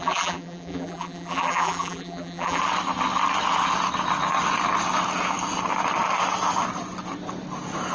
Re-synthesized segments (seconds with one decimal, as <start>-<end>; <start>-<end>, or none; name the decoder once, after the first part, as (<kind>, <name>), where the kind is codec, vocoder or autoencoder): 0.0-2.6 (vocoder, BigVGAN v2)